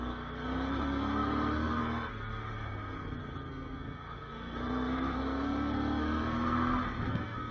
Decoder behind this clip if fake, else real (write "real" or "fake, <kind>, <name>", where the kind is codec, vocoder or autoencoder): fake, codec, SNAC